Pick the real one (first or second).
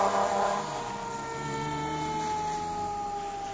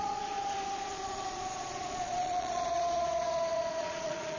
first